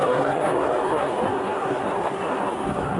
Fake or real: fake